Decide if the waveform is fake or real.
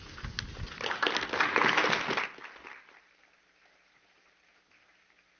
real